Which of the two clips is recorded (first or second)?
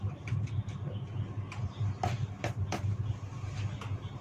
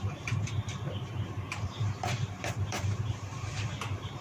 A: first